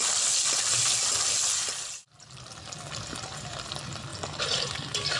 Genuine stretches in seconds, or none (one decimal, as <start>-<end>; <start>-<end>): 0.0-5.2